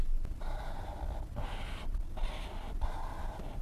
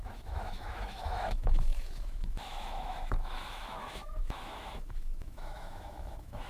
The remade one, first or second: second